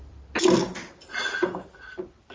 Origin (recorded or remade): recorded